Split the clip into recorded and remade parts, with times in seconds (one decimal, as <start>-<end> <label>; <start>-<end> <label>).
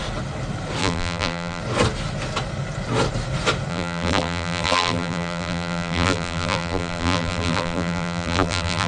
0.0-0.8 recorded; 0.8-1.6 remade; 1.6-3.7 recorded; 3.7-8.9 remade